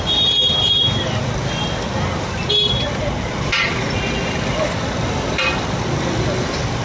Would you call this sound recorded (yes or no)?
yes